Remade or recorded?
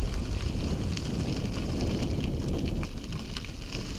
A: recorded